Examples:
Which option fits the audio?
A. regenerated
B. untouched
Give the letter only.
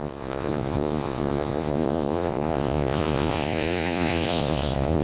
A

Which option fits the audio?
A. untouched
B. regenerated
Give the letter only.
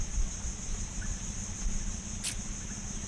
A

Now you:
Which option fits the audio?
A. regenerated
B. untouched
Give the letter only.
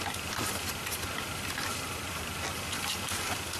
B